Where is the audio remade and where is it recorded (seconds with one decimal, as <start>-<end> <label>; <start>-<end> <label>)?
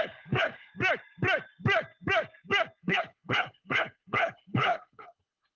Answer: 0.0-0.7 remade; 0.7-2.8 recorded; 2.8-5.6 remade